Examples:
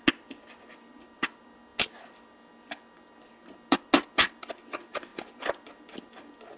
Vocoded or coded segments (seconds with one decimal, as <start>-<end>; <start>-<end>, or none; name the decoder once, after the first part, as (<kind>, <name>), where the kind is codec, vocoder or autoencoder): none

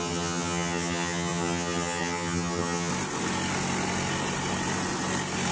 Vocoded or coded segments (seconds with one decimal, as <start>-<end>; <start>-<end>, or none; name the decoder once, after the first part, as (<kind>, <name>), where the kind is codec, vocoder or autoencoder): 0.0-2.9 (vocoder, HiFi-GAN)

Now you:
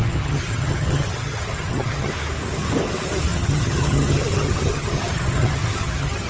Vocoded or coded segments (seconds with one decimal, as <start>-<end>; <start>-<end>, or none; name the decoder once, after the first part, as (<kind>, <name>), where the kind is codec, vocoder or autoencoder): 0.0-2.1 (vocoder, HiFi-GAN); 3.3-6.3

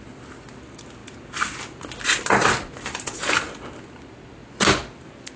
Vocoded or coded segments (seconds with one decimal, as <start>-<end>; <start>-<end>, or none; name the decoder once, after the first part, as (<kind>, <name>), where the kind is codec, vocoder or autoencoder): none